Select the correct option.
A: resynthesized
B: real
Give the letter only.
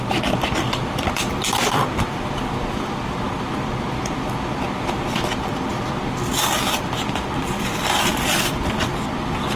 A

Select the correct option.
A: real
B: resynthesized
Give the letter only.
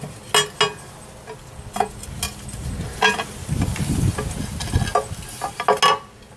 A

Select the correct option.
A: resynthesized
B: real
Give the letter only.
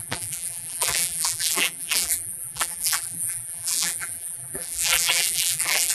A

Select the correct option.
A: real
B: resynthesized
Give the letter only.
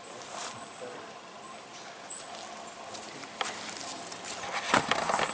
A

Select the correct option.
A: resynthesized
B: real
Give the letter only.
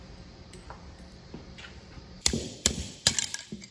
A